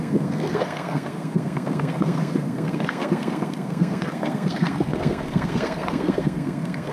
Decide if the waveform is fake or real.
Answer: fake